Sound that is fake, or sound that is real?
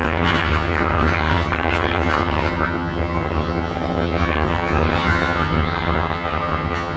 fake